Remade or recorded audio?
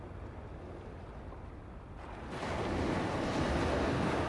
recorded